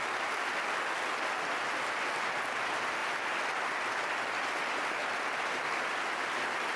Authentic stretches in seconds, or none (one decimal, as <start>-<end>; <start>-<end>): 0.0-6.8